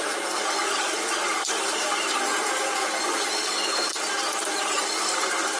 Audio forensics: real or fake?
fake